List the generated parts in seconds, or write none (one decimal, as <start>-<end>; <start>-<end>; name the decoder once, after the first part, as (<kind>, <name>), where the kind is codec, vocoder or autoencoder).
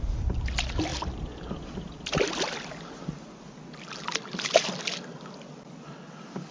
none